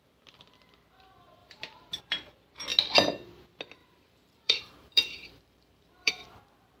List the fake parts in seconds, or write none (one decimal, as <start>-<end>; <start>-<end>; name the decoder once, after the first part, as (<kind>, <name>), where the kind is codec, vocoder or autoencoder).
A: 1.4-2.0 (vocoder, BigVGAN v2); 3.8-6.1